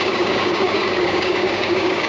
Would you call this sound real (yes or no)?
no